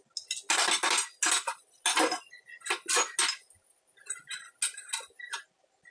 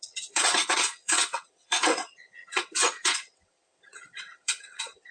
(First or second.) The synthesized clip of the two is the second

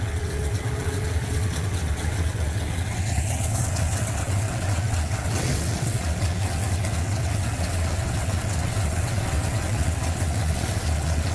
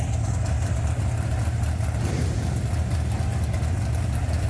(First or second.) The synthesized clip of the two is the first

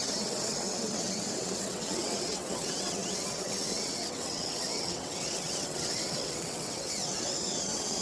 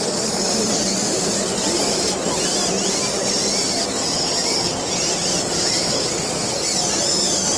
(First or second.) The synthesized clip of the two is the first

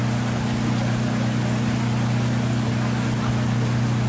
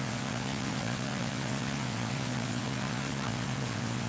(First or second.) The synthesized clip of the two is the second